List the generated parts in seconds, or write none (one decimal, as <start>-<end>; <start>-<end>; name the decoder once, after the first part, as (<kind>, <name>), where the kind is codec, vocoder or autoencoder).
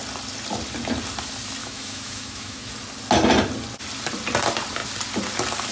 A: 1.6-2.7 (autoencoder, DAC-VAE)